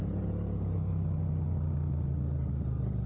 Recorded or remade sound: recorded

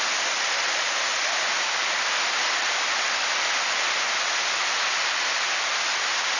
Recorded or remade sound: recorded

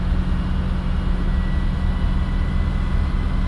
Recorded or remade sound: recorded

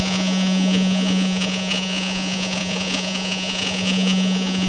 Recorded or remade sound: remade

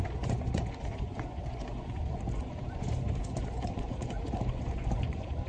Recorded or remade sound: remade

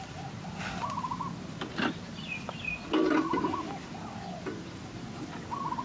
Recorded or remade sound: recorded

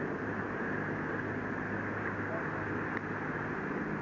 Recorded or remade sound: recorded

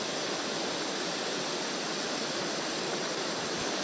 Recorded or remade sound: recorded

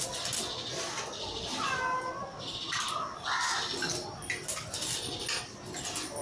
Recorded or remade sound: recorded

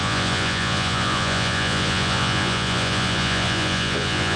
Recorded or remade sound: remade